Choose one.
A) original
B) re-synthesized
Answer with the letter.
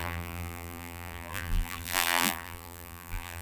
B